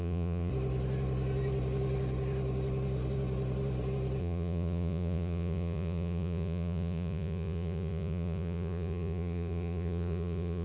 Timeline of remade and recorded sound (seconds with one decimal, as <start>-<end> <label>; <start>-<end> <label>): 0.0-0.5 remade; 0.5-4.2 recorded; 4.2-10.6 remade